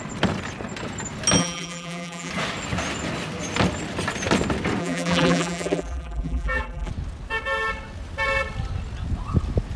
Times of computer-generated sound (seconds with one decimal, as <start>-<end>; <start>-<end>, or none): 1.4-2.3; 4.8-6.9